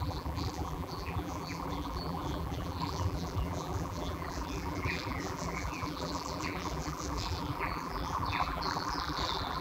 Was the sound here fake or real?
fake